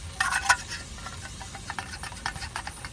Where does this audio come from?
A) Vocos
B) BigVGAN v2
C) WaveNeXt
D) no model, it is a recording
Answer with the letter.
D